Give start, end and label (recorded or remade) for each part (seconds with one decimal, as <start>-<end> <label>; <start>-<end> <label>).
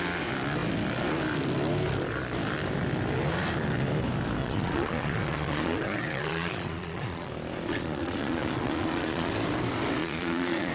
0.0-4.4 recorded; 4.4-7.3 remade; 7.3-7.7 recorded; 7.7-9.3 remade; 9.3-10.0 recorded; 10.0-10.7 remade